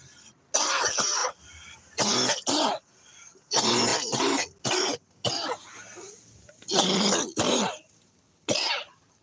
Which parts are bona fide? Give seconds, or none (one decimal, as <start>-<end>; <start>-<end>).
0.0-9.2